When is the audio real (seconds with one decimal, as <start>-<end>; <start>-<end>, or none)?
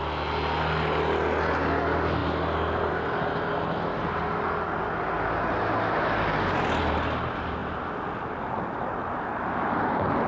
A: 0.0-10.3